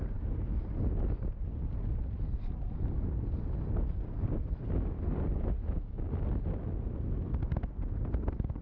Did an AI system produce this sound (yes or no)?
no